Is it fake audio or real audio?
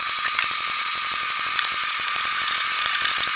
fake